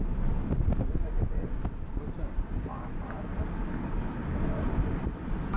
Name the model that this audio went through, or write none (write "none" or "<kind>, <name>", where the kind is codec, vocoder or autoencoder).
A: none